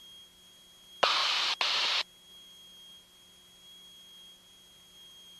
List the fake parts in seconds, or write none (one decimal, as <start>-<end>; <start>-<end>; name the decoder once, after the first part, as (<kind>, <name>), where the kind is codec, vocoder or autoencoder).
none